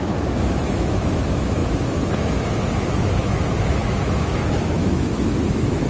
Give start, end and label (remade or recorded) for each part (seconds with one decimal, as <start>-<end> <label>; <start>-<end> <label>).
0.0-5.9 remade

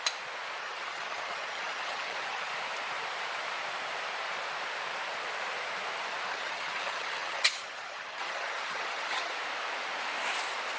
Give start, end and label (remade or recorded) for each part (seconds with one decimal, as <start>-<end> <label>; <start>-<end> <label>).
0.0-0.6 recorded; 0.6-2.5 remade; 2.5-6.3 recorded; 6.3-9.3 remade; 9.3-10.8 recorded